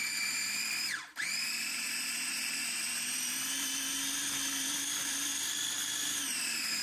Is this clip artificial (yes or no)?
yes